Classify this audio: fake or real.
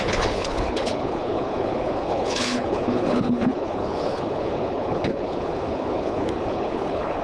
fake